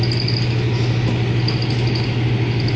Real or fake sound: real